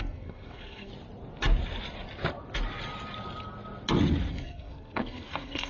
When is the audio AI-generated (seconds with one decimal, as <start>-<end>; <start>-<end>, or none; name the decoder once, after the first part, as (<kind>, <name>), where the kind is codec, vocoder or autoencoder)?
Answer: 0.0-0.9 (codec, SNAC); 4.3-5.7